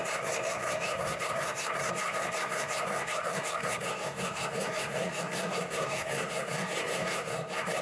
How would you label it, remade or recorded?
remade